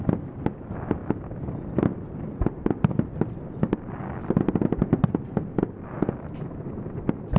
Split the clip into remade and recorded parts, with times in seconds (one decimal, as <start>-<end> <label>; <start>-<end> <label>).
0.0-7.4 recorded